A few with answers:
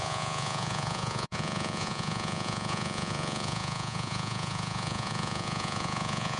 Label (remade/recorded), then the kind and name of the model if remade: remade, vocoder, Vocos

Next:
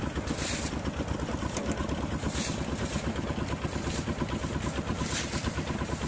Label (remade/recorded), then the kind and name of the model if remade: recorded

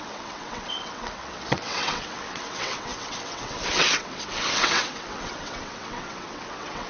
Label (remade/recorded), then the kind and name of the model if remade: remade, vocoder, WaveNeXt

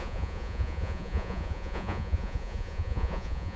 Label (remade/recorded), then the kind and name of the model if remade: remade, vocoder, Vocos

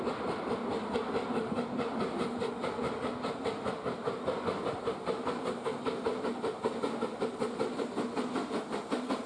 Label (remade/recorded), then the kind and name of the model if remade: recorded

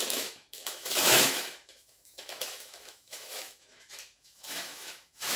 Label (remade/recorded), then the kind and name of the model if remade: remade, autoencoder, DAC-VAE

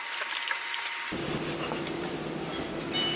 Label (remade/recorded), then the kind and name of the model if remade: remade, vocoder, BigVGAN v2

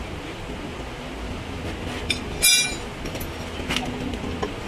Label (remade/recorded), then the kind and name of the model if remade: recorded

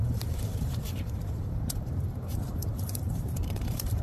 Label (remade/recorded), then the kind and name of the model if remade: remade, vocoder, BigVGAN v2